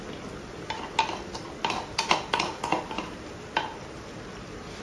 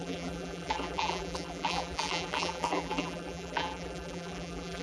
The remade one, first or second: second